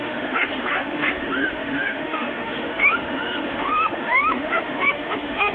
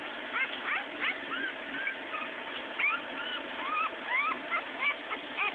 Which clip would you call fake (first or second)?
first